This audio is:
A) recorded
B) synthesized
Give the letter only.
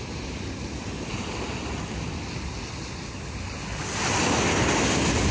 A